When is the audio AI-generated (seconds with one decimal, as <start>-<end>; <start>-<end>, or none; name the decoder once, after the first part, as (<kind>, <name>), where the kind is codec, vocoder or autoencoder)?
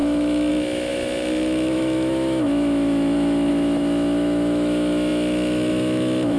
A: 0.0-6.4 (autoencoder, DAC-VAE)